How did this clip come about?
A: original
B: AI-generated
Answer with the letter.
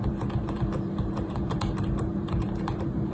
B